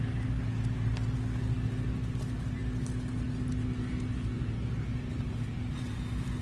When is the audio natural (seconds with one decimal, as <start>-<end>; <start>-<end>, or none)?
0.0-6.4